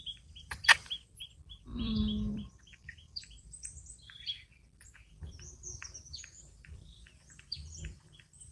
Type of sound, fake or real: fake